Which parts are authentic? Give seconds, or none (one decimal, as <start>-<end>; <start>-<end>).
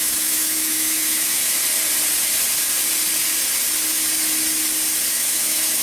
1.6-5.1